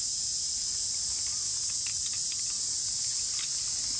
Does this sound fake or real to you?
real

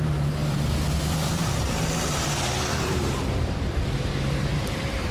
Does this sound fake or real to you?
fake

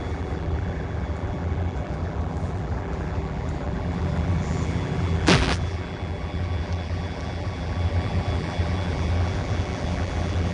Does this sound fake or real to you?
fake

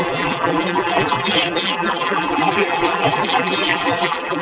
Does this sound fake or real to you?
fake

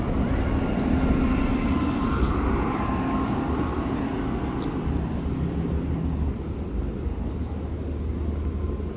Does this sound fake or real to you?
real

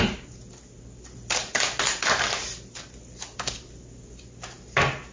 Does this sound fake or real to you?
real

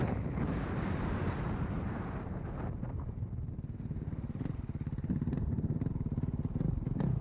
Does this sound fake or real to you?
fake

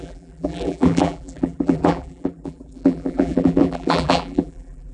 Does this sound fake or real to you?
fake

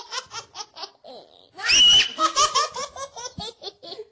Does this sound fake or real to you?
real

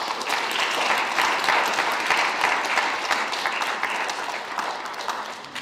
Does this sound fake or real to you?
real